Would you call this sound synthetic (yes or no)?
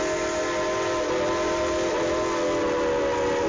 no